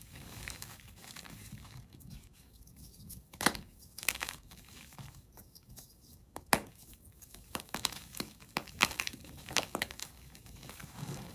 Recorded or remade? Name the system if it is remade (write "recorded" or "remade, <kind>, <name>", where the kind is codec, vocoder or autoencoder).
remade, codec, DAC